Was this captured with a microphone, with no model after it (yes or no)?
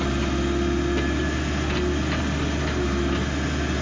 yes